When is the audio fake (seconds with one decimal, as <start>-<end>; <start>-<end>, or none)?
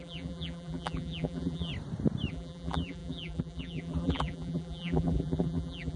0.0-1.7; 2.3-6.0